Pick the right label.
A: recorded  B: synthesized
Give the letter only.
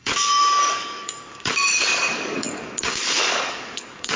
B